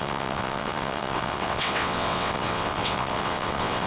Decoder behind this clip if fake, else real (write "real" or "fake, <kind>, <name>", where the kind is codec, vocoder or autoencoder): fake, vocoder, WaveNeXt